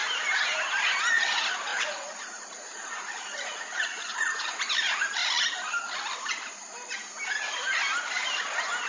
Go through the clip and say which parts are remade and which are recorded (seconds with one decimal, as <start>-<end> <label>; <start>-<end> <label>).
0.0-1.7 recorded; 1.7-4.6 remade; 4.6-8.9 recorded